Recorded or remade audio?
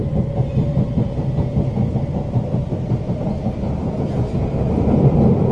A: recorded